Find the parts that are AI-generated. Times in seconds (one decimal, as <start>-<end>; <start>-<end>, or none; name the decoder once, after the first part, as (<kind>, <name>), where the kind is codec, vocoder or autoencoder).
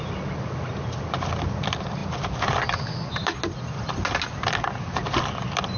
none